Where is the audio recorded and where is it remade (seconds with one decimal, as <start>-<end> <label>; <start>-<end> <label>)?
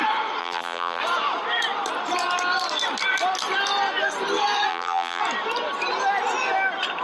0.0-0.4 recorded; 0.4-1.0 remade; 1.0-4.7 recorded; 4.7-5.2 remade; 5.2-7.0 recorded